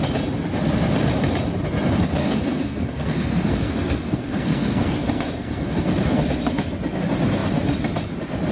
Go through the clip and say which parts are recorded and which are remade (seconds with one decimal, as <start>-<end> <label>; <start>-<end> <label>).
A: 0.0-2.2 recorded; 2.2-6.7 remade; 6.7-8.5 recorded